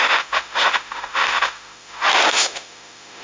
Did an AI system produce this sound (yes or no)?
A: yes